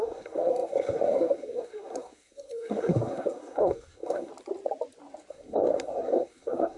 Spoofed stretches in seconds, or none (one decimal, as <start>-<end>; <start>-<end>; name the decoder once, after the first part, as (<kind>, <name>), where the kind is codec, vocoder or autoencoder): 0.0-4.3 (codec, SNAC); 5.3-6.8